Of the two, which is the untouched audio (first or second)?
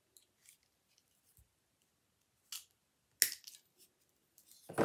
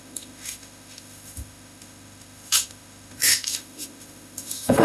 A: first